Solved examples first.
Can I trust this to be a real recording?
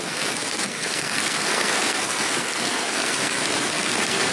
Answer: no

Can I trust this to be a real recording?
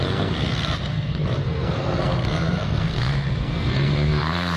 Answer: no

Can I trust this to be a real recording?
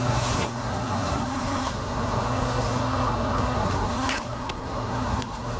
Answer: no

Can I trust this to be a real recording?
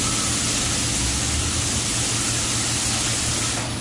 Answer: yes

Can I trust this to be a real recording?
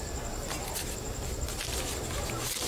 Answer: yes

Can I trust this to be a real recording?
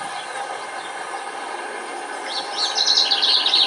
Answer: yes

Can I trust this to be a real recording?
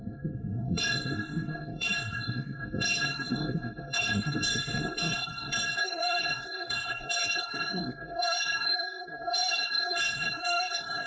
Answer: no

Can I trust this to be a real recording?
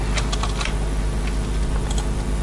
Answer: yes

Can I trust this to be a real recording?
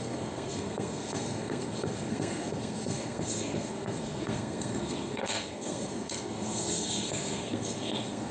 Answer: no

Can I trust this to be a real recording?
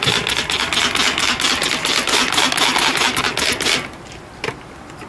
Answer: yes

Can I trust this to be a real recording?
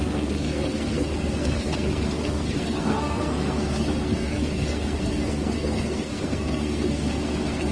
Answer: no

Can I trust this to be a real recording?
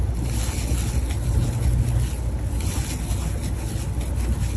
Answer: yes